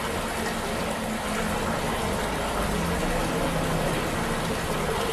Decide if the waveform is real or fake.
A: real